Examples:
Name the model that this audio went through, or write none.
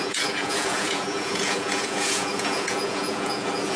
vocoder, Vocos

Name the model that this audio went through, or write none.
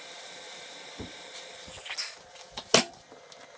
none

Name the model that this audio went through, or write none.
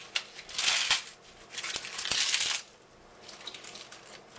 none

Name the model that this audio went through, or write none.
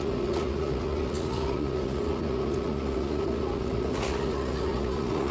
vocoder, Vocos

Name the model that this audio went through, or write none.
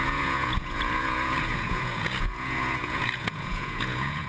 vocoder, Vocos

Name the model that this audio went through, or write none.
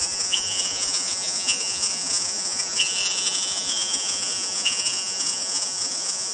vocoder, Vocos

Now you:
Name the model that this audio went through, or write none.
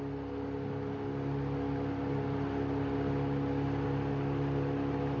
none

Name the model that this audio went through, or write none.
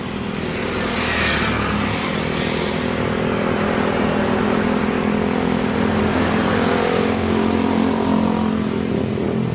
none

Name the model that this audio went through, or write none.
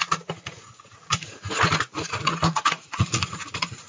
vocoder, Vocos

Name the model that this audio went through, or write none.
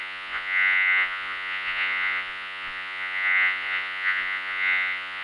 vocoder, Vocos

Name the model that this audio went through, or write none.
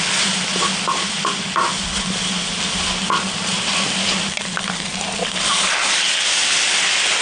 none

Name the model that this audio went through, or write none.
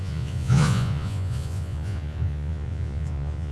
vocoder, Vocos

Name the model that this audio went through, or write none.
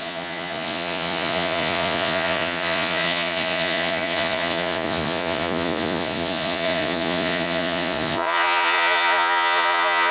vocoder, Vocos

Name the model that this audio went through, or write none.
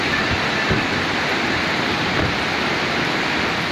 none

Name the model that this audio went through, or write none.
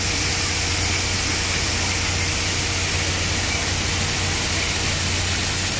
none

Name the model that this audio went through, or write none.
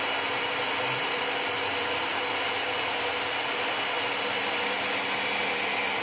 none